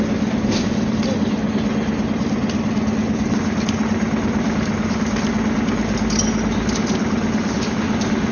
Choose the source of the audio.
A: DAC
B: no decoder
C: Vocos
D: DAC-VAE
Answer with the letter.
B